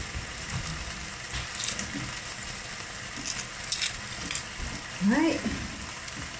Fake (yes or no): no